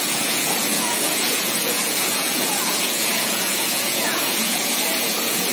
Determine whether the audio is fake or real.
fake